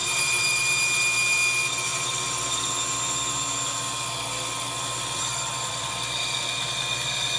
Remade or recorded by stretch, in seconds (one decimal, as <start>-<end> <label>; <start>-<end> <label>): 0.0-0.6 remade; 0.6-1.9 recorded; 1.9-2.7 remade; 2.7-5.0 recorded; 5.0-5.9 remade; 5.9-7.4 recorded